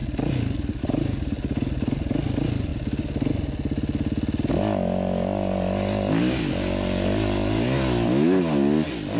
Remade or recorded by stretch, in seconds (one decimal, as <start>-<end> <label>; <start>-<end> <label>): 0.0-9.2 recorded

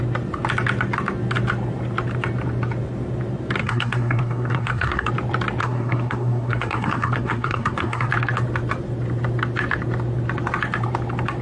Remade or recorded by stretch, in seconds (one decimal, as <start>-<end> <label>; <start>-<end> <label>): 0.0-3.6 recorded; 3.6-5.1 remade; 5.1-5.6 recorded; 5.6-8.1 remade; 8.1-11.4 recorded

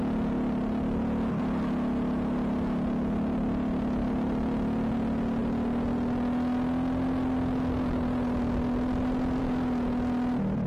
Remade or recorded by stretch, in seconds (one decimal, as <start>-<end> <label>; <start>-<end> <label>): 0.0-10.7 recorded

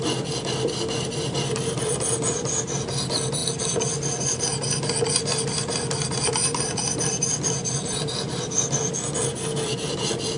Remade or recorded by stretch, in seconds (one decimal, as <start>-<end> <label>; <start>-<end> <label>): 0.0-10.4 recorded

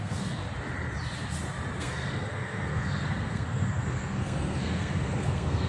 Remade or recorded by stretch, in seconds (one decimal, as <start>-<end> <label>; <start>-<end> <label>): 0.0-0.4 remade; 0.4-1.8 recorded; 1.8-5.7 remade

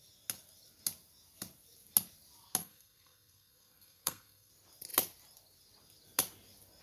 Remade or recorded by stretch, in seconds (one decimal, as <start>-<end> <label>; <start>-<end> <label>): 0.0-2.6 recorded; 2.6-4.5 remade; 4.5-6.8 recorded

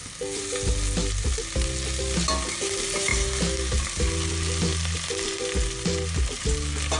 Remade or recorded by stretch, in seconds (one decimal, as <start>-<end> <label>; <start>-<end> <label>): 0.0-7.0 recorded

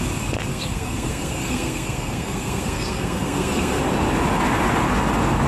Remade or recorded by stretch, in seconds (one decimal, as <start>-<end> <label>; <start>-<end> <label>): 0.0-0.5 recorded; 0.5-3.8 remade; 3.8-5.5 recorded